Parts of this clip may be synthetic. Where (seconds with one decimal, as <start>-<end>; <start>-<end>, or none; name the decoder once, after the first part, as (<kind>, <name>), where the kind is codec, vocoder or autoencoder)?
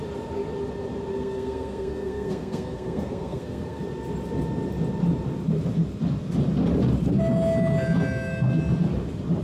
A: 1.1-3.8 (codec, SNAC)